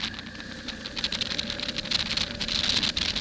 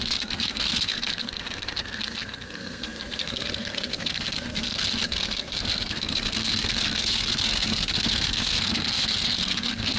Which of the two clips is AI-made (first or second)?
second